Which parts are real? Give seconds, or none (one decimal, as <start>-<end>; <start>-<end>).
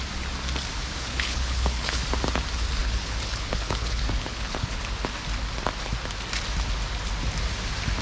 0.0-1.1; 2.0-2.8; 4.8-8.0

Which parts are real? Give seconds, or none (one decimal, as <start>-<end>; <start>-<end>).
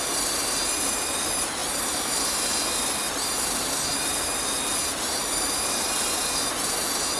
0.0-7.2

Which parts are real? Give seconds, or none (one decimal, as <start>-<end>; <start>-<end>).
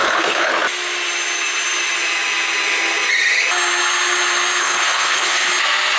0.5-4.6; 5.5-6.0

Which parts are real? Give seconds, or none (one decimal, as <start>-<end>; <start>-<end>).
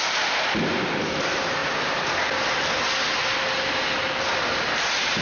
0.0-5.2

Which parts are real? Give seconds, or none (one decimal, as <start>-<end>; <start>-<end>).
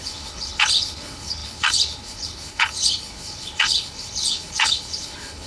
none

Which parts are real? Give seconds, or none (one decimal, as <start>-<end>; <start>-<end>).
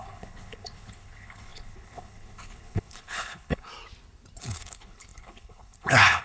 3.7-4.4